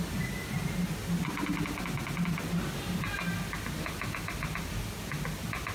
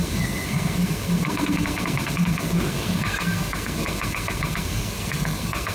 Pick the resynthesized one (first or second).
second